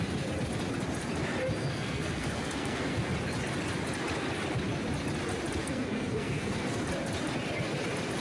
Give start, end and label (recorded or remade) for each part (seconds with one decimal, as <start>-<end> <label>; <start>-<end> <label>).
0.0-1.6 recorded; 1.6-3.1 remade; 3.1-5.6 recorded; 5.6-6.8 remade; 6.8-8.2 recorded